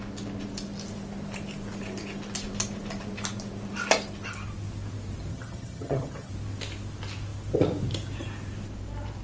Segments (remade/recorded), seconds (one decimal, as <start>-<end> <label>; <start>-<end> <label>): 0.0-5.3 recorded; 5.3-6.3 remade; 6.3-9.2 recorded